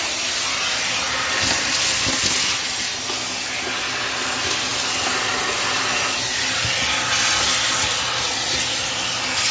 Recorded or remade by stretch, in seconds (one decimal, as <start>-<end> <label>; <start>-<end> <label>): 0.0-9.5 recorded